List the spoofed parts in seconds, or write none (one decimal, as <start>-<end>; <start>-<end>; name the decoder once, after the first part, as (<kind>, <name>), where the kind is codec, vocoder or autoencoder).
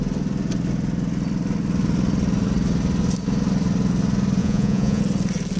4.4-5.0 (vocoder, Vocos)